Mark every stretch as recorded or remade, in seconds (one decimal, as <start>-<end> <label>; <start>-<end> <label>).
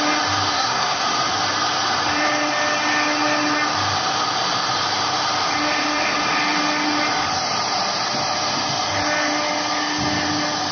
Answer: 0.0-0.5 recorded; 0.5-1.0 remade; 1.0-10.7 recorded